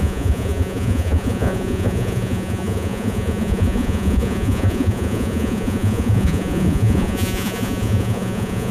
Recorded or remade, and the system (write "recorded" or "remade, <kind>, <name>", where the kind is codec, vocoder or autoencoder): remade, vocoder, Vocos